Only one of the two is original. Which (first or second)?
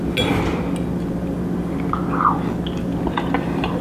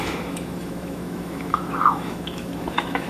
first